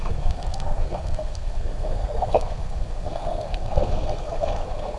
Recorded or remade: remade